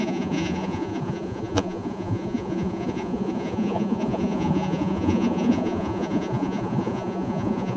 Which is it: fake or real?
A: fake